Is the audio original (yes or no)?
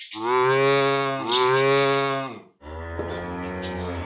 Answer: yes